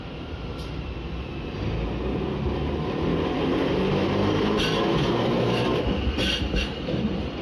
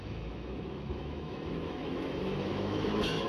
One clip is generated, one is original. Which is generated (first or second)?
second